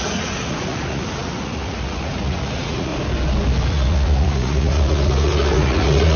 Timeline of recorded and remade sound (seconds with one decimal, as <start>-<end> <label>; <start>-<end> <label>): 0.0-2.9 remade; 2.9-3.7 recorded; 3.7-6.2 remade